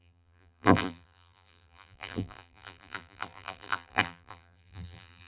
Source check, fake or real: fake